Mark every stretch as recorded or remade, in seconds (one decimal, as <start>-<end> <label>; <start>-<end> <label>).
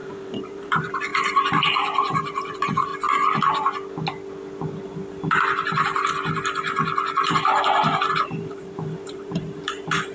0.0-2.9 remade; 2.9-8.1 recorded; 8.1-10.1 remade